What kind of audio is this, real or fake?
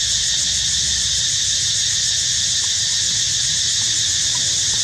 real